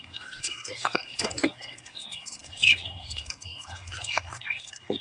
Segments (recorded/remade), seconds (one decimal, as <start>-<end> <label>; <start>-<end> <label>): 0.0-5.0 remade